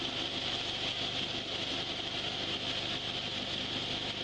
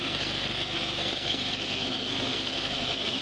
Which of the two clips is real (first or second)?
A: first